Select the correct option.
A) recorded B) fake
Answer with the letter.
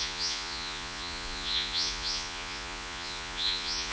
B